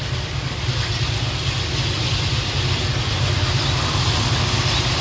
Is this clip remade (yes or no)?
no